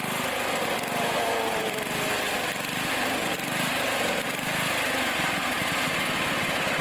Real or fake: real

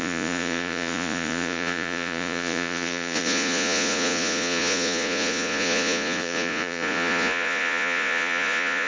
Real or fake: fake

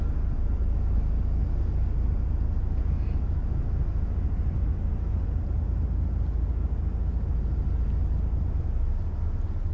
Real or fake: real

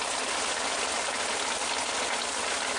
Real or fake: real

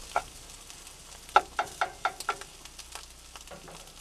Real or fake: real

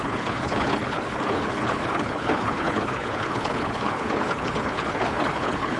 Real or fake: fake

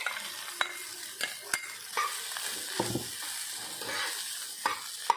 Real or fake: real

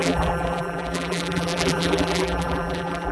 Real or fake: fake